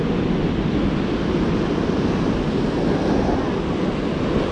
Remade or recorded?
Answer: recorded